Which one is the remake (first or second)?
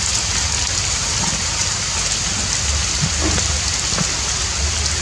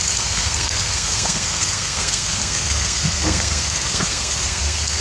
second